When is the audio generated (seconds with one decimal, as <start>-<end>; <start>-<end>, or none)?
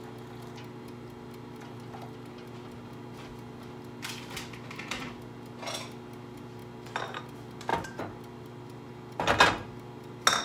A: none